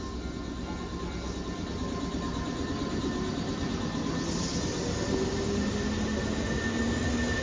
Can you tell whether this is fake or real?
real